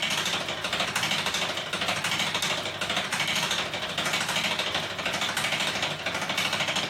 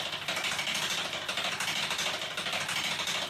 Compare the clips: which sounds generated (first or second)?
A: second